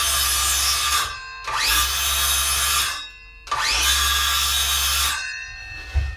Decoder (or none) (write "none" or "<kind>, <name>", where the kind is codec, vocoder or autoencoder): none